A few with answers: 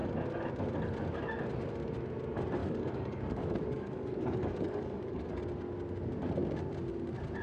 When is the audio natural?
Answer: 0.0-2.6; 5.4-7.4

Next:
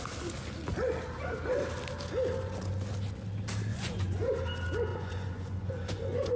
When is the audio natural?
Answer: 0.0-3.7; 4.3-4.9

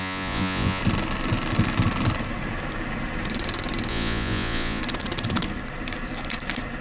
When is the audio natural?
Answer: 0.8-3.9; 4.8-6.8

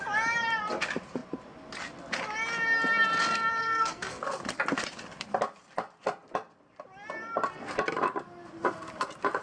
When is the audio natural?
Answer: 0.0-3.6; 4.2-9.4

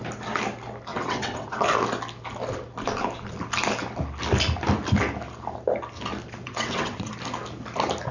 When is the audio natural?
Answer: 0.0-0.9; 1.6-6.4; 7.1-8.1

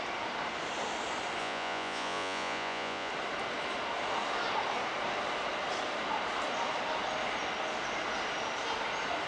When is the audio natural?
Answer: 0.0-1.4; 3.1-9.3

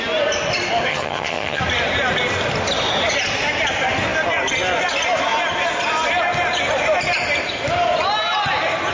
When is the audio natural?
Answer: 0.0-0.9; 1.6-8.9

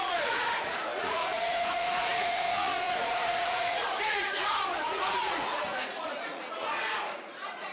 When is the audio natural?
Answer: none